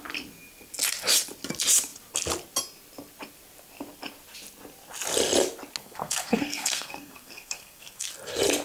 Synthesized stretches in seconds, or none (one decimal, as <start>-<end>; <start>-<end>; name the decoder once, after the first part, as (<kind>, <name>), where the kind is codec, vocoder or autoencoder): 5.8-8.1 (codec, SNAC)